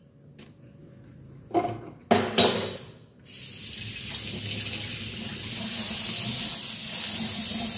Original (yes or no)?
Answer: yes